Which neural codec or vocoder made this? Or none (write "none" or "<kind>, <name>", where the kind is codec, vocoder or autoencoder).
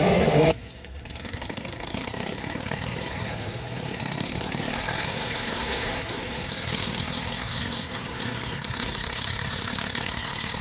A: codec, SNAC